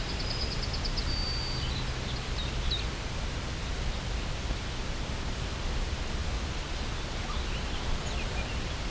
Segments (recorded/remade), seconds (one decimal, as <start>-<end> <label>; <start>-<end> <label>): 0.0-8.9 recorded